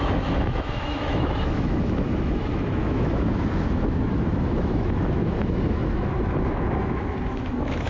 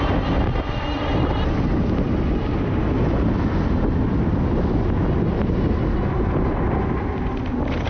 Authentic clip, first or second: second